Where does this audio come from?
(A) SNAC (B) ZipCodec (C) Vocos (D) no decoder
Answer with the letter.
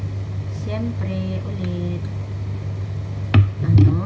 D